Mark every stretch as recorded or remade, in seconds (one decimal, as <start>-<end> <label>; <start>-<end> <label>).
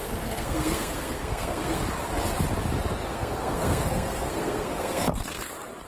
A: 0.0-1.8 remade; 1.8-3.1 recorded; 3.1-5.5 remade; 5.5-5.9 recorded